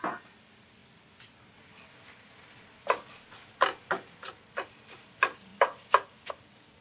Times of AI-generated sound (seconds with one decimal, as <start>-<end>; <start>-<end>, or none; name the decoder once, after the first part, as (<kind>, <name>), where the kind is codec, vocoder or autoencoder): none